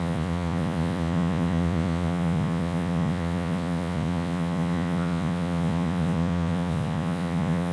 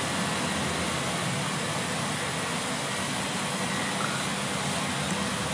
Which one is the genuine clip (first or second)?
second